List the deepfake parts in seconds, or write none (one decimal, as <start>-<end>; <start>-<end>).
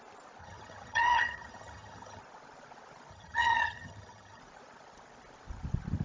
0.4-2.2; 3.1-4.4